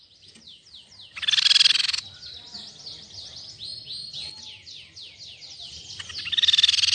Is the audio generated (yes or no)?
no